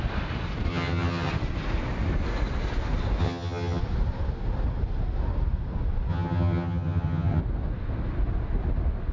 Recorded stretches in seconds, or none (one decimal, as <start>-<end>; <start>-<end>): 0.0-0.7; 1.3-3.2; 3.8-6.1; 7.4-9.1

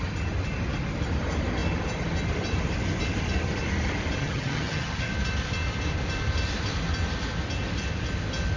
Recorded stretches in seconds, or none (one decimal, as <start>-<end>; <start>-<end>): 0.0-4.2; 5.1-8.6